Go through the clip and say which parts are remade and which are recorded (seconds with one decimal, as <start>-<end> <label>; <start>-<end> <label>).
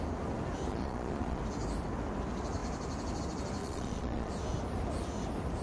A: 0.0-0.7 recorded; 0.7-1.4 remade; 1.4-3.6 recorded; 3.6-4.3 remade; 4.3-5.6 recorded